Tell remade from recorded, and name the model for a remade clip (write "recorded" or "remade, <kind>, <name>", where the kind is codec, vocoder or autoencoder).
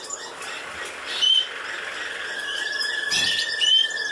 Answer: recorded